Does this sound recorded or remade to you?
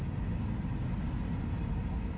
recorded